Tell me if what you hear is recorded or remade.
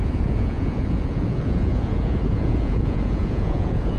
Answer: remade